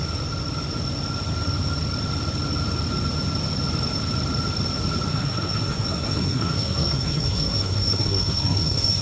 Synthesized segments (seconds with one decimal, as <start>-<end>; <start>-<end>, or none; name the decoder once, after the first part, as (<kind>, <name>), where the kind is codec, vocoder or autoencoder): 5.1-9.0 (codec, SNAC)

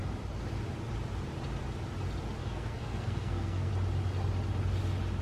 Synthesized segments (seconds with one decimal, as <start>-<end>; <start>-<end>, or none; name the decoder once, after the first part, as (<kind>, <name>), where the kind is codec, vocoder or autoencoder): 2.4-3.7 (codec, SNAC)

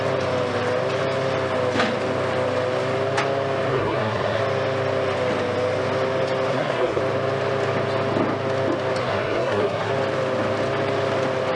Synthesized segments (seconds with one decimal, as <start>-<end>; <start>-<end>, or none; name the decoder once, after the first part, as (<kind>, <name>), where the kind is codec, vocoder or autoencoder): 3.7-4.4 (codec, SNAC); 6.5-7.0; 9.0-9.9

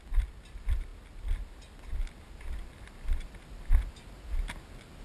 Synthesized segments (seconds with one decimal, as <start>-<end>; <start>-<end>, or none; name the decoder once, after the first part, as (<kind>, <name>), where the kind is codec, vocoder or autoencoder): none

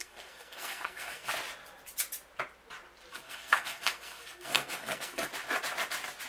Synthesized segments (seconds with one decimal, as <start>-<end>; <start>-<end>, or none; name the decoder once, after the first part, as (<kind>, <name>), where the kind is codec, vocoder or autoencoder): 0.0-1.3 (codec, SNAC); 3.1-5.3

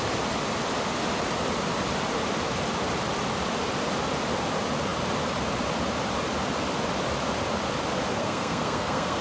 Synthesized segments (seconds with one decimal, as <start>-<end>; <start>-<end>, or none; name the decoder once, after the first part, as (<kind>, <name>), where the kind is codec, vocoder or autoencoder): 8.1-9.2 (codec, SNAC)

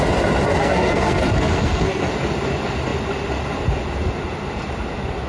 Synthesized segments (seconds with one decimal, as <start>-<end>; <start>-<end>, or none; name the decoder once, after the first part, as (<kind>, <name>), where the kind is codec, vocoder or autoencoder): 0.5-2.1 (codec, SNAC)